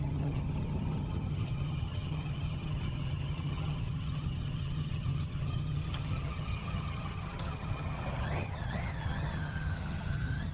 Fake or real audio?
fake